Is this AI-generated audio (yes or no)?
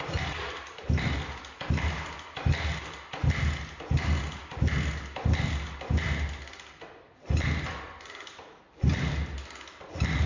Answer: no